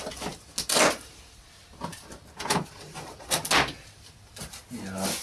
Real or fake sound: real